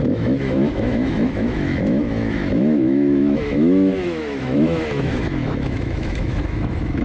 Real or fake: fake